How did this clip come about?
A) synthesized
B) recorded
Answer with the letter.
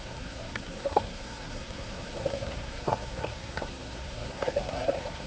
A